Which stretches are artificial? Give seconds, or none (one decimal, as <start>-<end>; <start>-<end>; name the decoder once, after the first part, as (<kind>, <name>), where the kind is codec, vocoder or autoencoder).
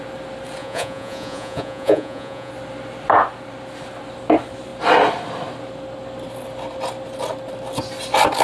0.6-2.5 (vocoder, Vocos)